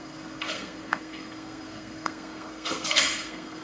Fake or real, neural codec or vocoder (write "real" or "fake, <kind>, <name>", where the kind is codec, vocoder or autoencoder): fake, codec, SNAC